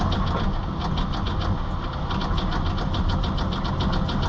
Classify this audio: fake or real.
real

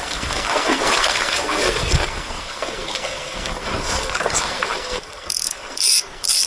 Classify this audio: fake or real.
fake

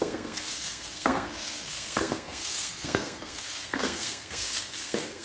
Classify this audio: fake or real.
fake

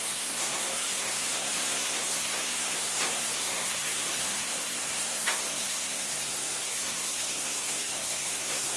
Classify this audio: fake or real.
fake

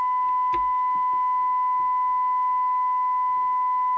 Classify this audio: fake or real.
real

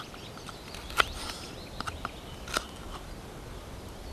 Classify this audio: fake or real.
real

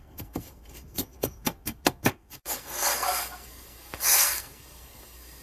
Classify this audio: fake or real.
fake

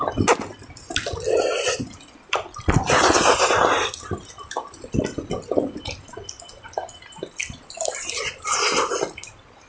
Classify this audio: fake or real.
real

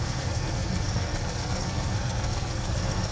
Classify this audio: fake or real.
fake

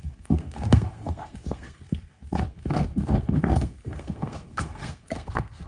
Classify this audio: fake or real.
fake